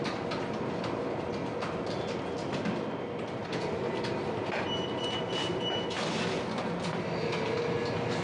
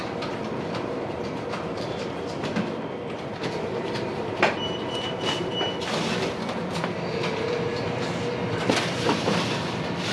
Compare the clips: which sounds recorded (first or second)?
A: first